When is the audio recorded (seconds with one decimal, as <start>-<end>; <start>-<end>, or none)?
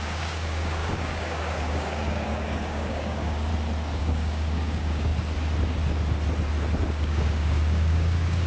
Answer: 3.5-4.0; 5.1-6.9